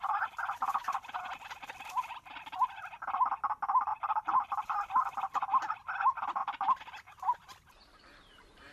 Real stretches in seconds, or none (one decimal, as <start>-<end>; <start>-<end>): 0.0-3.9; 5.6-6.4; 7.0-8.7